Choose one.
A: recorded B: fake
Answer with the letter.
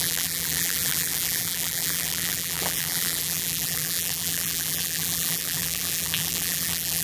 B